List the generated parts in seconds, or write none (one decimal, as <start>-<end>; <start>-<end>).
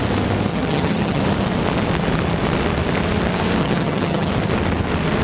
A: 0.5-1.2; 3.6-4.3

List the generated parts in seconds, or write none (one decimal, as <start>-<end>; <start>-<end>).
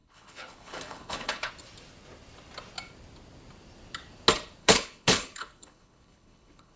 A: 0.0-1.5; 4.6-6.8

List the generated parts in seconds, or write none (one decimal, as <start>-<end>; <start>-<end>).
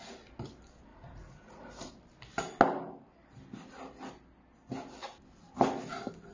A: 0.9-1.9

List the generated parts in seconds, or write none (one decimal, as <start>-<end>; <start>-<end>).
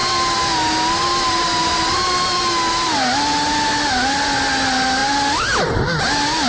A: none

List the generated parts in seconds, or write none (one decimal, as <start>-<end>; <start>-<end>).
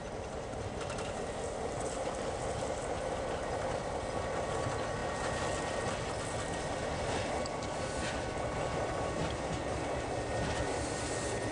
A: 0.0-9.2; 10.6-11.5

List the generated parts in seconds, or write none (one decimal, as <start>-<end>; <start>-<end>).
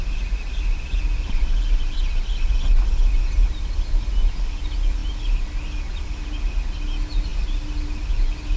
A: none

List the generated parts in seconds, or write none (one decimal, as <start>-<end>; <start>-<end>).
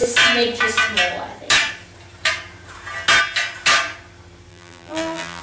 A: 4.5-5.4